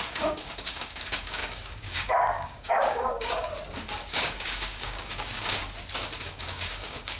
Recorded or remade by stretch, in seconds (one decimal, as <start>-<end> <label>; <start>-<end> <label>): 0.0-3.5 remade; 3.5-4.0 recorded; 4.0-5.6 remade; 5.6-6.2 recorded; 6.2-7.2 remade